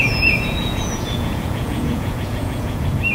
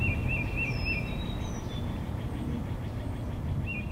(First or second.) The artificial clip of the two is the first